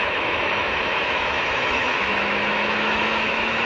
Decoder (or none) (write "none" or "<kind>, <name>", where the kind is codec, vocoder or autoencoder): autoencoder, DAC-VAE